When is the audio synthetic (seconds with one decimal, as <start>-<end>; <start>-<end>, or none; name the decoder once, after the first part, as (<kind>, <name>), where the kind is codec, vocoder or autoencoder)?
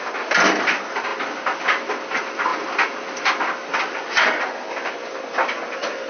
none